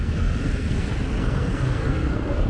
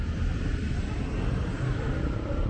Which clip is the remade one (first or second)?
first